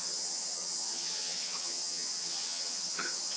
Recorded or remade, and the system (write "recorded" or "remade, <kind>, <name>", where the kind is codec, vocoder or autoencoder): remade, vocoder, HiFi-GAN